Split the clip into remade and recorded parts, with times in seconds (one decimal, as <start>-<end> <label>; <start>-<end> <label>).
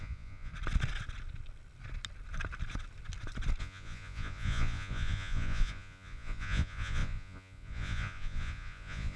0.0-0.5 remade; 0.5-3.6 recorded; 3.6-9.2 remade